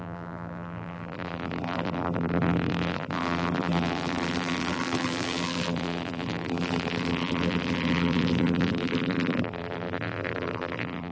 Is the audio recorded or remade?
remade